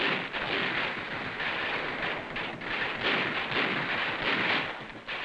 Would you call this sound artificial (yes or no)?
no